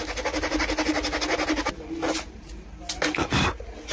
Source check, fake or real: real